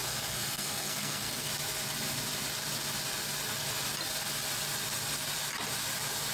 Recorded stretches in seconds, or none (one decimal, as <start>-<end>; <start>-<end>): 1.5-6.3